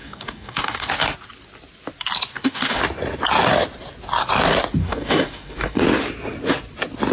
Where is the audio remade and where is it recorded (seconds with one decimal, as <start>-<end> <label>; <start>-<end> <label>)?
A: 0.0-0.9 remade; 0.9-2.3 recorded; 2.3-2.8 remade; 2.8-4.8 recorded; 4.8-5.8 remade; 5.8-7.1 recorded